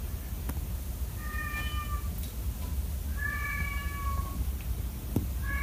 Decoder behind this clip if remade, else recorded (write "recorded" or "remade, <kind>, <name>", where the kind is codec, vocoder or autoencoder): recorded